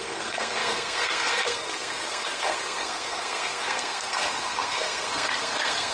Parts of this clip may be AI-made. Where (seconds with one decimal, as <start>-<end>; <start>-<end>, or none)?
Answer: 0.0-5.9